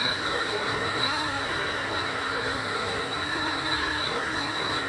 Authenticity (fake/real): fake